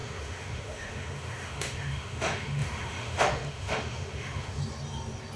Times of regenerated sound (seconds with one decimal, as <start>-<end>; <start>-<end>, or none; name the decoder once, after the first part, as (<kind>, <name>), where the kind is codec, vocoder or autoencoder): 0.0-4.6 (autoencoder, DAC-VAE)